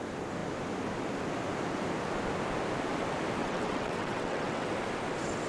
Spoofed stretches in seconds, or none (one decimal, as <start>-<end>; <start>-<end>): 3.4-4.7

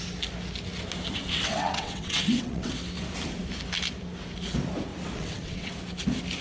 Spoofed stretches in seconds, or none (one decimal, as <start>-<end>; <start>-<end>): 1.2-2.7; 4.9-5.7

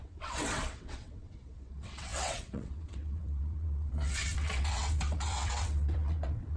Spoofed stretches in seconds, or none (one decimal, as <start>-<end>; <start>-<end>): 0.0-6.6

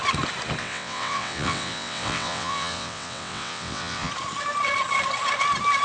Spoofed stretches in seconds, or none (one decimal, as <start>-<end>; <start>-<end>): 0.6-4.1

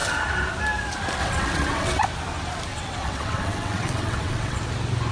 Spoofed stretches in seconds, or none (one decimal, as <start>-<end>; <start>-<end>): 1.2-2.0; 2.7-4.6